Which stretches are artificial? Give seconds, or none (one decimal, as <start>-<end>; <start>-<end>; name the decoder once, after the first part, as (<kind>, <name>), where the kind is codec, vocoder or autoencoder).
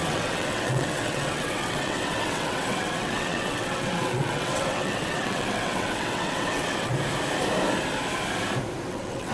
0.0-6.9 (vocoder, WaveNeXt); 8.9-9.3